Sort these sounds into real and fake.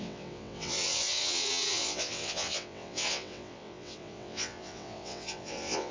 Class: fake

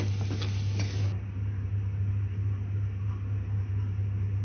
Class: real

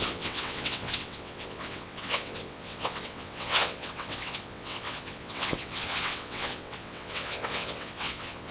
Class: fake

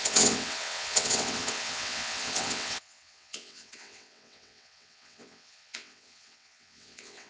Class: fake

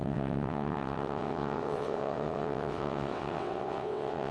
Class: fake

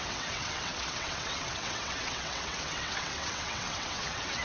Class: fake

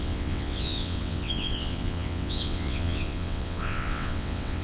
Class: fake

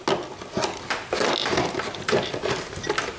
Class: real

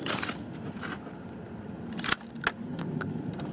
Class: real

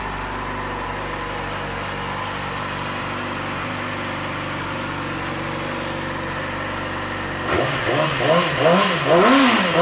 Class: real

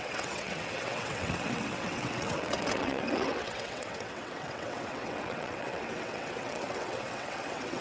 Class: fake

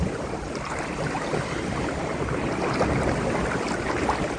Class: real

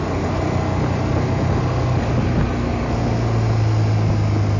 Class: real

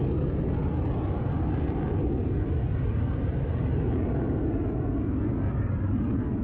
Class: real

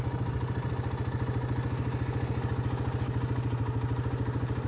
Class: real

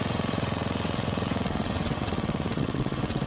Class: fake